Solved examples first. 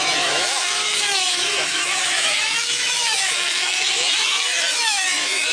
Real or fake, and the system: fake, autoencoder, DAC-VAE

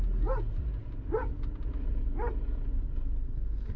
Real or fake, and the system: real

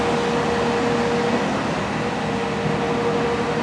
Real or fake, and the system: real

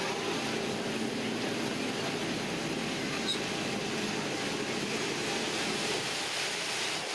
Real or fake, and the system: real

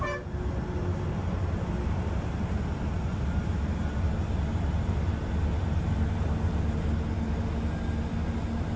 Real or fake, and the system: real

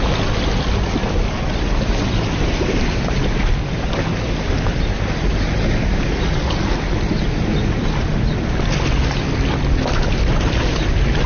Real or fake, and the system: real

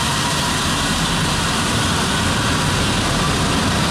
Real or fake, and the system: real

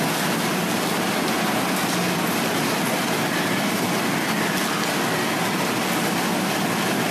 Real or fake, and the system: real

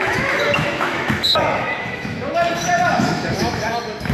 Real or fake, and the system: fake, autoencoder, DAC-VAE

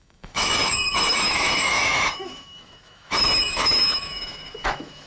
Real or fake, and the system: fake, autoencoder, DAC-VAE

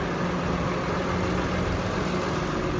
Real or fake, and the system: real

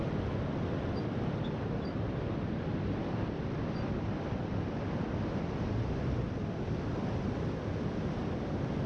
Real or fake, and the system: real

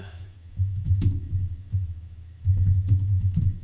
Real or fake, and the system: fake, autoencoder, DAC-VAE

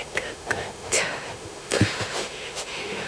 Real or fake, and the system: fake, autoencoder, DAC-VAE